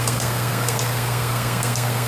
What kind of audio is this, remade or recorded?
remade